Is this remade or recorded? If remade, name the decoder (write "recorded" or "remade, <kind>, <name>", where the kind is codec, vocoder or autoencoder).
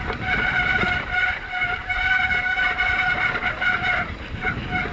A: recorded